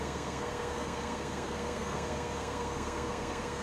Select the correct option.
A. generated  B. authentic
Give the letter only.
A